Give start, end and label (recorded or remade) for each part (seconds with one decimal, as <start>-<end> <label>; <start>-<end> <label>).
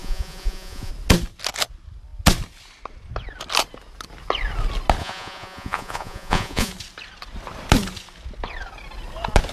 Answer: 0.0-0.9 remade; 0.9-5.0 recorded; 5.0-6.7 remade; 6.7-9.5 recorded